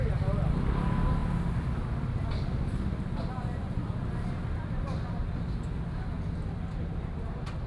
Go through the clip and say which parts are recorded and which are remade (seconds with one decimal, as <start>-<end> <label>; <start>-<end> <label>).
0.0-7.7 recorded